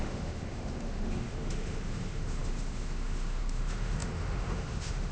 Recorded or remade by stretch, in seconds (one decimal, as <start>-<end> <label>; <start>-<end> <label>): 0.0-5.1 remade